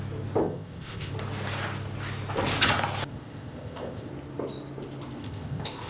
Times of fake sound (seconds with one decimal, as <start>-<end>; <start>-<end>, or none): 0.4-1.1; 3.1-4.1; 5.2-5.9